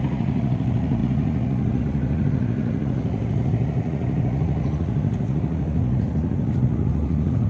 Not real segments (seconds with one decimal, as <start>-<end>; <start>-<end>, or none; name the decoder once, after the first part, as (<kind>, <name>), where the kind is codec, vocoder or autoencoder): 0.0-7.5 (vocoder, Vocos)